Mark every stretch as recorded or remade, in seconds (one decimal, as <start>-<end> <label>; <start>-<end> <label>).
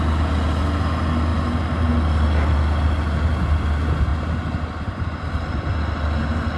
0.0-6.6 recorded